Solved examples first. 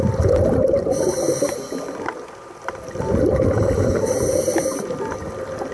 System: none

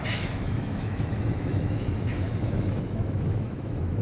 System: autoencoder, DAC-VAE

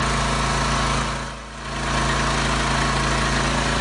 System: none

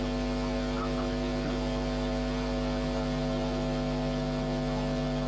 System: none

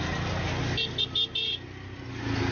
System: none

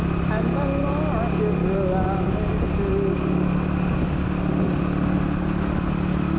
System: none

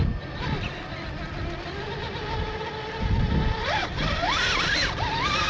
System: none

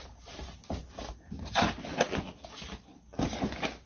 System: none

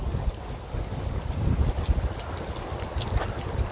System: none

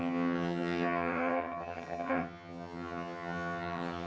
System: vocoder, HiFi-GAN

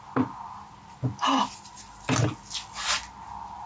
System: none